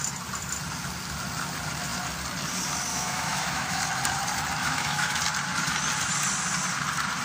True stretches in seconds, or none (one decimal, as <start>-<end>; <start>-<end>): 0.0-2.9; 3.8-4.6; 5.2-7.2